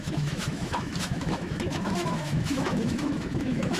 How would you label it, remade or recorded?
remade